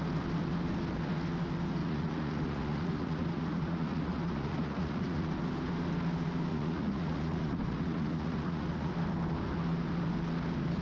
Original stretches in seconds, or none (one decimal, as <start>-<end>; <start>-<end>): 0.0-1.8; 5.3-6.5; 8.9-10.8